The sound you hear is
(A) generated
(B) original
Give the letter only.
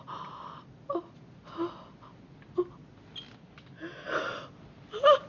B